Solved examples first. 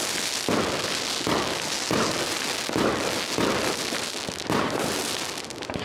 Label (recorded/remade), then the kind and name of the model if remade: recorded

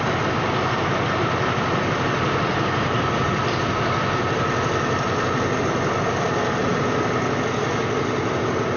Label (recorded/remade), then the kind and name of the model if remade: recorded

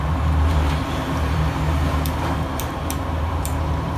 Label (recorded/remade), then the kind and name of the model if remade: remade, vocoder, BigVGAN v2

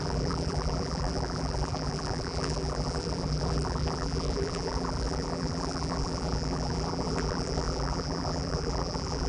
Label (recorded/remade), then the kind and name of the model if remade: remade, vocoder, BigVGAN v2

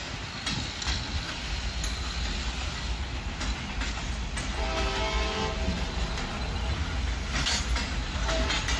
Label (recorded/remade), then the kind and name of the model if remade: recorded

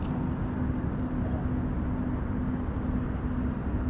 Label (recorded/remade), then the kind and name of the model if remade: recorded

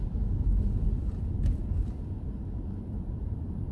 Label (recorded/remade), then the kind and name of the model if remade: remade, vocoder, BigVGAN v2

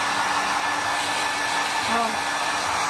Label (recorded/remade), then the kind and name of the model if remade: recorded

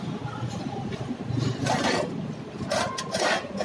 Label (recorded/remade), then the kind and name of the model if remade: recorded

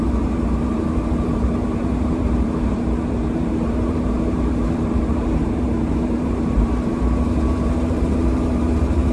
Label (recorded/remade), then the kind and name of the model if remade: remade, vocoder, BigVGAN v2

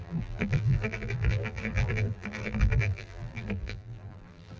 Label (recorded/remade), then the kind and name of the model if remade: remade, vocoder, BigVGAN v2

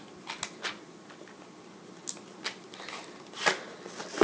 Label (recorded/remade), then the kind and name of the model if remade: recorded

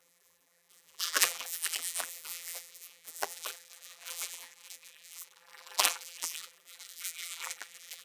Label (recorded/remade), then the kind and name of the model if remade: remade, vocoder, BigVGAN v2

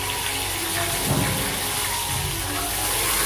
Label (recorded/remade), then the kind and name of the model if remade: recorded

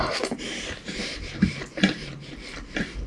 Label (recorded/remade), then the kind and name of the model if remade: remade, vocoder, BigVGAN v2